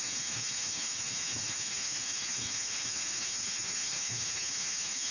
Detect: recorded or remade remade